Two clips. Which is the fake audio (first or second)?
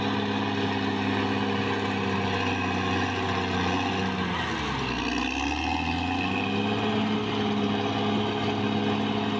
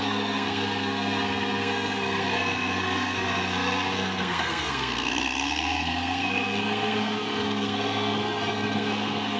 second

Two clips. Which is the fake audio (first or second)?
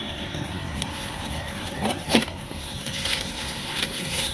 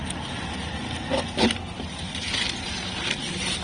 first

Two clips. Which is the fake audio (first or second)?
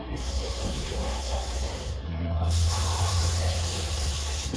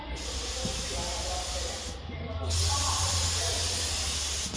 first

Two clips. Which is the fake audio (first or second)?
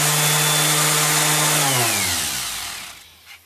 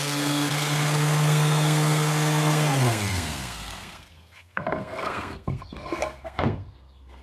second